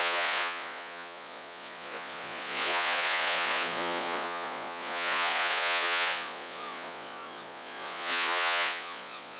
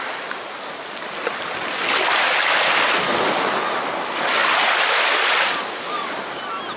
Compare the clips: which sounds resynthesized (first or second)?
first